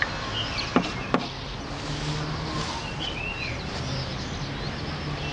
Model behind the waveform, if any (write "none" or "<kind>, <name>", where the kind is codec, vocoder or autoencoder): none